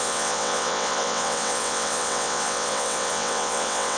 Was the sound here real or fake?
fake